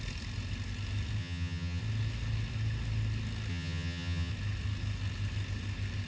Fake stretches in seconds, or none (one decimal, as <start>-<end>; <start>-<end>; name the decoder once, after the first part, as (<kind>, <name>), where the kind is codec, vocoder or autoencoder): 1.2-1.8 (vocoder, HiFi-GAN); 3.5-4.3